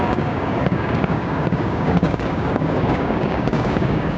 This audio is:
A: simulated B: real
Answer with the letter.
A